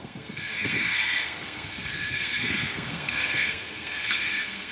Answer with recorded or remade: remade